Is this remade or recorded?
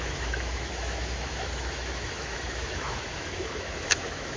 remade